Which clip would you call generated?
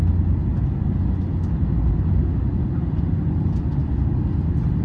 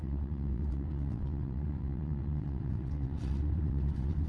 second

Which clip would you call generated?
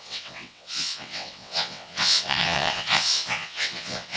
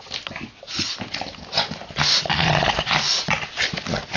first